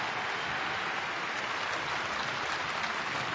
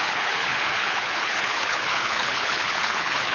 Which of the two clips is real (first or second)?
first